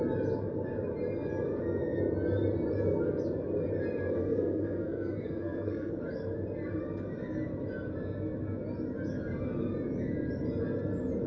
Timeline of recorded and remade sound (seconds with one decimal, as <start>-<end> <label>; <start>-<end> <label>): 0.0-4.2 recorded; 4.2-5.9 remade; 5.9-11.3 recorded

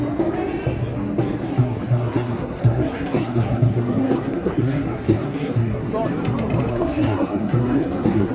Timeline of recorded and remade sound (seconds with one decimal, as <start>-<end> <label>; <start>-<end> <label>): 0.0-1.5 recorded; 1.5-5.9 remade; 5.9-6.7 recorded; 6.7-8.3 remade